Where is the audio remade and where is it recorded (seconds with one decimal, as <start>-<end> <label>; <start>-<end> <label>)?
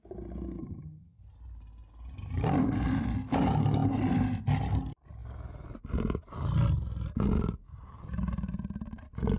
0.0-0.6 recorded; 0.6-1.2 remade; 1.2-9.4 recorded